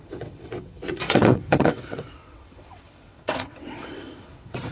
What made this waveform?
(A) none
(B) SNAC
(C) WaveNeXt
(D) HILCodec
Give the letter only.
C